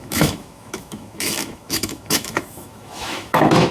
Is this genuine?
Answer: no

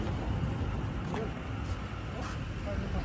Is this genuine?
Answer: yes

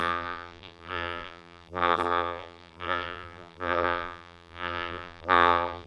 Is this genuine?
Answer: no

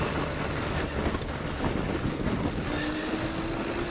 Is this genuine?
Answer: yes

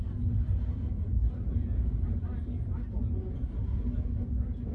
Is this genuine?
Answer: yes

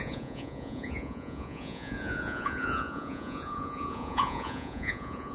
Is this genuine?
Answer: no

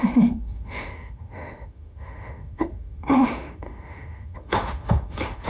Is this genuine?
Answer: no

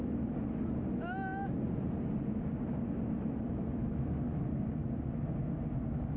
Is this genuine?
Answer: yes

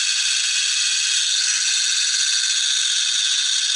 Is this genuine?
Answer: yes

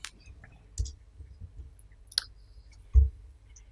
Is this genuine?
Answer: yes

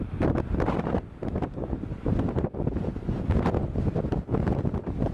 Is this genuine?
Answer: yes